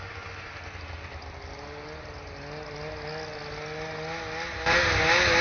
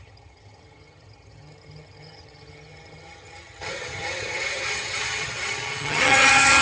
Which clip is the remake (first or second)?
second